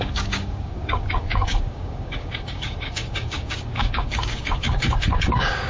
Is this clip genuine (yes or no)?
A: no